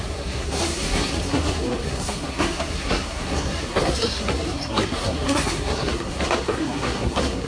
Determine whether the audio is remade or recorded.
remade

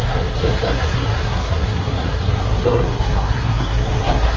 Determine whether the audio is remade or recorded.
remade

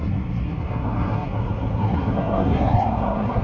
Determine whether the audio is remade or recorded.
remade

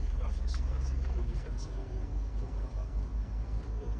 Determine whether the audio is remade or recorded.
remade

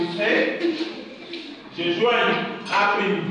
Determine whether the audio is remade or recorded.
recorded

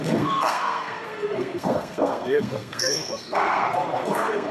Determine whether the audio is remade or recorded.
remade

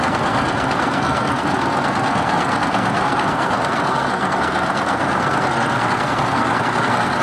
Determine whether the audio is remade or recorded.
remade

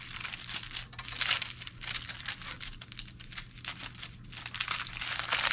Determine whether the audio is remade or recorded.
recorded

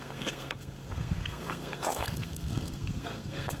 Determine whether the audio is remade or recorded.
remade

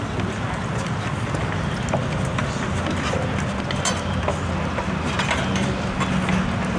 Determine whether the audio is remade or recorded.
recorded